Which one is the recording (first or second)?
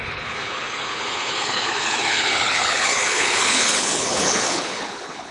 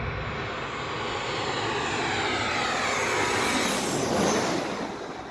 second